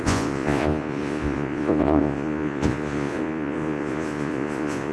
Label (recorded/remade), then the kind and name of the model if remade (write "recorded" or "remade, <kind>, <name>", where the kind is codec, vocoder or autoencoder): remade, vocoder, Vocos